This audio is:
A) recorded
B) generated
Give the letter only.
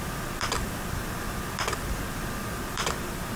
B